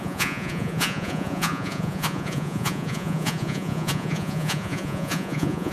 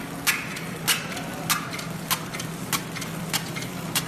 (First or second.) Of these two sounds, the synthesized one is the first